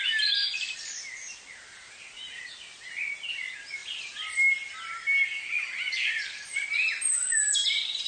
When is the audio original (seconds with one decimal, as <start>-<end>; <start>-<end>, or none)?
0.0-8.1